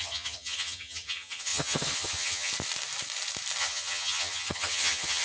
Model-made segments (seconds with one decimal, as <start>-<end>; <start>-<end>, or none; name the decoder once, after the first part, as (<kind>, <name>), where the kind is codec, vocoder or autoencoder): 0.0-2.5 (vocoder, HiFi-GAN); 3.6-5.2

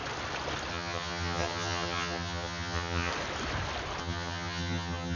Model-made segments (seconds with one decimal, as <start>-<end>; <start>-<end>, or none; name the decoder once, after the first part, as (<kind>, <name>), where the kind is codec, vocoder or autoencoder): 0.7-3.1 (vocoder, HiFi-GAN); 4.0-5.2